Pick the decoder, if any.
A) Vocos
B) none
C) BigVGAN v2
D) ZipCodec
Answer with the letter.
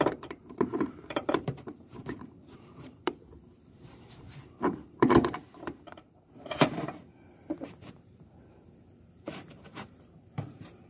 C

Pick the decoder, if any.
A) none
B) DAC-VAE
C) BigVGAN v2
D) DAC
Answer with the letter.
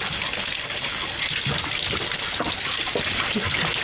A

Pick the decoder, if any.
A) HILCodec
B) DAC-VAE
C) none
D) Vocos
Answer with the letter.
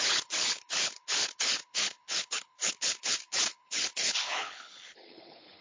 A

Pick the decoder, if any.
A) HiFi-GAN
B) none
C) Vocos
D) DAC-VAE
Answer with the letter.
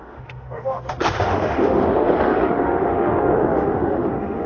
D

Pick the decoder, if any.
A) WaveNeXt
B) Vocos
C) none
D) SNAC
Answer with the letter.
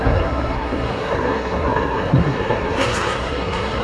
D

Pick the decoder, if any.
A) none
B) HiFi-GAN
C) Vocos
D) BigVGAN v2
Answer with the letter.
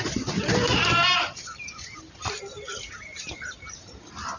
D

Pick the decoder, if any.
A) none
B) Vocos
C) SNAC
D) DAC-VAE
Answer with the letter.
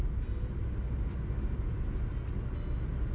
A